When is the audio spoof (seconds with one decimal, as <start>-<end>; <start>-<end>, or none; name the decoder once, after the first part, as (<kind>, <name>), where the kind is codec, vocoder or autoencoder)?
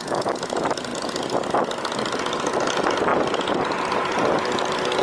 none